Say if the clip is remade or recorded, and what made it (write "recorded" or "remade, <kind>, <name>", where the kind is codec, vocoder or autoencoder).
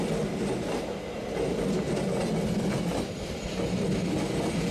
recorded